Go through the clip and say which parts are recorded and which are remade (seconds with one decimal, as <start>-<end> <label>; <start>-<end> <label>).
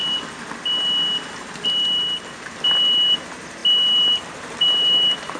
0.0-3.1 recorded; 3.1-3.6 remade; 3.6-4.3 recorded; 4.3-5.4 remade